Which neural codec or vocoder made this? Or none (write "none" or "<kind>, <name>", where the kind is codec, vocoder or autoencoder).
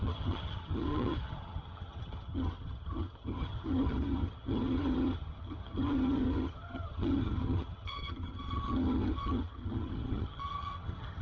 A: vocoder, HiFi-GAN